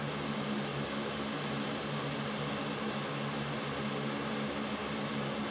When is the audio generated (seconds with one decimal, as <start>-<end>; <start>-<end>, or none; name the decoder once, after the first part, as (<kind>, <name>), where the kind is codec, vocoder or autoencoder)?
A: none